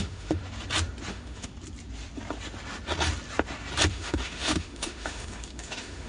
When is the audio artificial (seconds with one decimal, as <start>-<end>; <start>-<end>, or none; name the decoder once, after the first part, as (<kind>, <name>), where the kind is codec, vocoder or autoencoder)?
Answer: 0.0-0.4 (autoencoder, DAC-VAE); 1.1-1.5; 3.9-6.1